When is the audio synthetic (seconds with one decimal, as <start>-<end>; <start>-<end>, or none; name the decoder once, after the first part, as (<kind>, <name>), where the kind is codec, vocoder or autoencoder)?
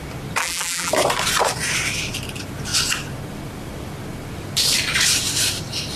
0.4-0.9 (vocoder, BigVGAN v2)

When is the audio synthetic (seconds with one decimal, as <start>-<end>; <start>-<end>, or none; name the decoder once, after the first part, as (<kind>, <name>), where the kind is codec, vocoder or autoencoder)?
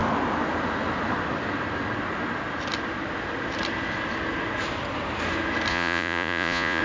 5.7-6.8 (vocoder, Vocos)